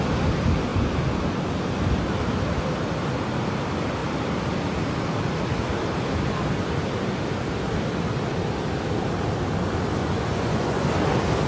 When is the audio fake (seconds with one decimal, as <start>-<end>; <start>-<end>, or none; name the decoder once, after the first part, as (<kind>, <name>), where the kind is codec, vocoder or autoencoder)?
10.0-10.9 (vocoder, Vocos)